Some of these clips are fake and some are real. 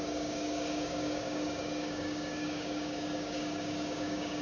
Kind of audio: fake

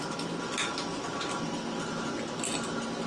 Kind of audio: real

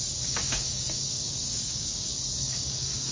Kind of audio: fake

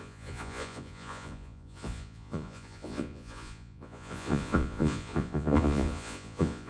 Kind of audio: fake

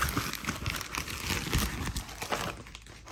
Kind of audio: real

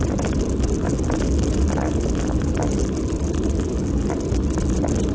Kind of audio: real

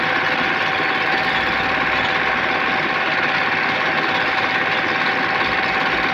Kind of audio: real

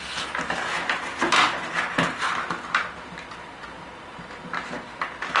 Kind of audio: real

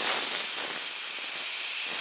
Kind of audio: real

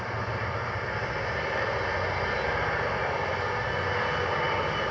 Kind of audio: real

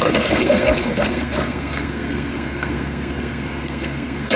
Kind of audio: fake